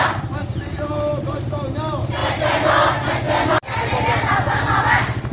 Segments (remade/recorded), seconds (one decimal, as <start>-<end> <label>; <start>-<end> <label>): 0.0-0.4 recorded; 0.4-1.4 remade; 1.4-2.2 recorded; 2.2-2.9 remade; 2.9-5.3 recorded